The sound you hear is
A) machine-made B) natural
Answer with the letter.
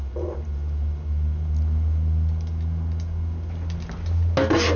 B